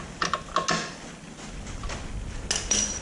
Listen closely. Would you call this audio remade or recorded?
recorded